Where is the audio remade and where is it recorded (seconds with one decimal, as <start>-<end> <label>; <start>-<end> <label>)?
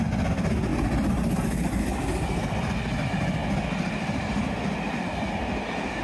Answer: 0.0-6.0 recorded